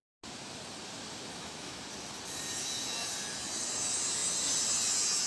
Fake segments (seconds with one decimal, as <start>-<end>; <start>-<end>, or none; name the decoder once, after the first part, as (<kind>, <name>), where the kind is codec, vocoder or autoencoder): 1.3-1.8 (autoencoder, DAC-VAE)